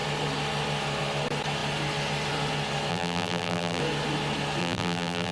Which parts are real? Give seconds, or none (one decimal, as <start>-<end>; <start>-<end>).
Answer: 0.0-2.9; 3.8-4.6